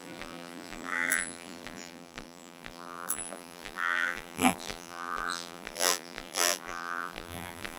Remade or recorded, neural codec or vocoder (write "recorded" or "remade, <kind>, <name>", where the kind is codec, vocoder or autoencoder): remade, vocoder, BigVGAN v2